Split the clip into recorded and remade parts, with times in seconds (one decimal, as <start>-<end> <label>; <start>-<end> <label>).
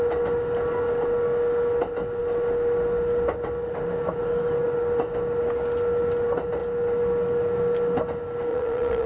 0.0-8.5 recorded; 8.5-9.1 remade